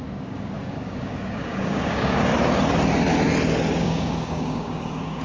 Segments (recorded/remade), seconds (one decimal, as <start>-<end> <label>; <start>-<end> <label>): 0.0-2.3 remade; 2.3-3.8 recorded; 3.8-5.2 remade